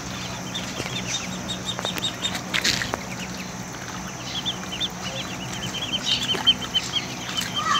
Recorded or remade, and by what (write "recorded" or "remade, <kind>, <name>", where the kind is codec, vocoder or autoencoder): recorded